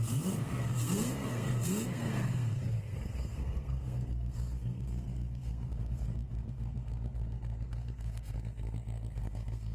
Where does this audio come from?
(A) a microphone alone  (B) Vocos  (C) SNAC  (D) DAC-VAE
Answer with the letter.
C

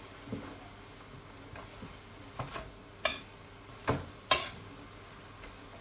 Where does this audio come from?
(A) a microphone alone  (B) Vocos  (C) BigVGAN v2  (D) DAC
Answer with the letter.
A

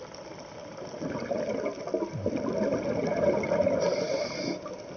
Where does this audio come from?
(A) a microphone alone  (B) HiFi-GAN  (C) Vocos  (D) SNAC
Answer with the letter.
A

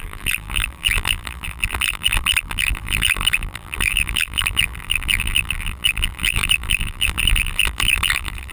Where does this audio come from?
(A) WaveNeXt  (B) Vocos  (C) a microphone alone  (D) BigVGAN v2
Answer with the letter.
D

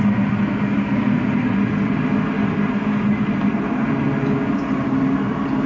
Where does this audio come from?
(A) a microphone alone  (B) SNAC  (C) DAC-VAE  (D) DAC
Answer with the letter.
A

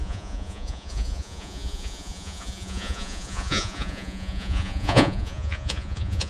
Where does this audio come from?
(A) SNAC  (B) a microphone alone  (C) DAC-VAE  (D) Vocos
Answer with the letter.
D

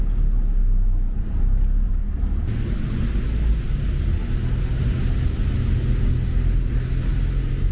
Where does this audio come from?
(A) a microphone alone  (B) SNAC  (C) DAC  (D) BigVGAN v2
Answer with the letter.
A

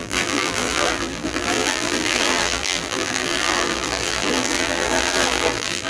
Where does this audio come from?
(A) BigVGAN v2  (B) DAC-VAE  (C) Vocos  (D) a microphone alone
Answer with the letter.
A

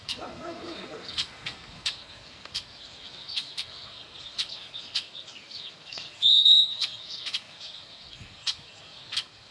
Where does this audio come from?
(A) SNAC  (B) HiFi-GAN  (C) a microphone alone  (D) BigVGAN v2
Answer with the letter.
A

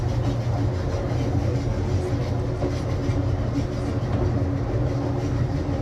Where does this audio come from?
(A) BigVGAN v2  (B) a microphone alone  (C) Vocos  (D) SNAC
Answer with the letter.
B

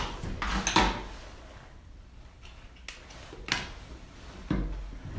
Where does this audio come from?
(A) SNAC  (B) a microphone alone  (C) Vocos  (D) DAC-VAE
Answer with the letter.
B